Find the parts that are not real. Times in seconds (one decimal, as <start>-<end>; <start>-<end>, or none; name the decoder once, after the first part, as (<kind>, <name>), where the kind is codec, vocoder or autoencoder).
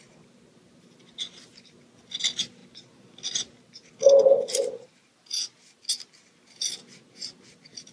none